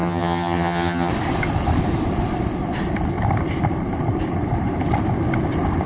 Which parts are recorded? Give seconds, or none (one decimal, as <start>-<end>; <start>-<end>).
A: 1.1-5.9

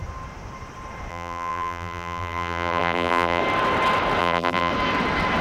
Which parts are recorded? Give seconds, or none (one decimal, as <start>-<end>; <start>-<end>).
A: 0.0-1.1; 3.4-4.2; 4.7-5.4

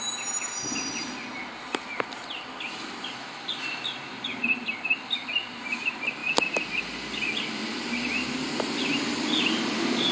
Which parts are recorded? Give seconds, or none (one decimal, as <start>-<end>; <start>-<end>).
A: 0.0-10.1